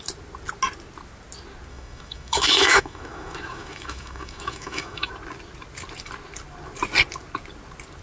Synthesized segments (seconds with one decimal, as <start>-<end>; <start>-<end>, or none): 1.7-5.1